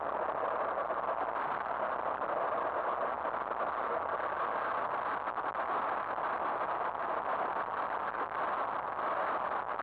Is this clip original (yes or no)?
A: yes